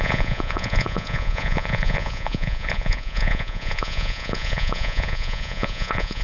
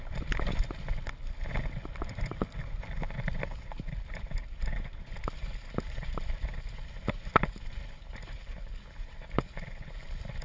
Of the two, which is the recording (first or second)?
second